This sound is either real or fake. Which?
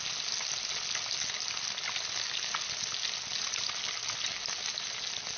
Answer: real